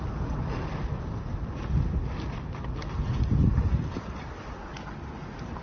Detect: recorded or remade recorded